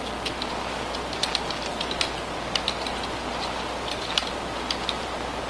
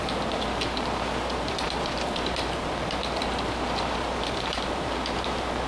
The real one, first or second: first